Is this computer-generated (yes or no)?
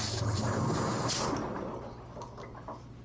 no